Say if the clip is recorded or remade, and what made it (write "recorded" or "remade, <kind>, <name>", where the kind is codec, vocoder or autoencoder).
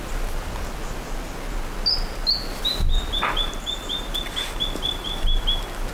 recorded